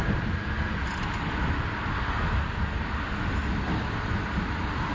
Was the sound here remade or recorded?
recorded